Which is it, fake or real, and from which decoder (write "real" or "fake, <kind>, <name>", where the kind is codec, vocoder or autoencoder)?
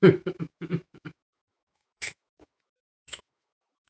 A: fake, autoencoder, DAC-VAE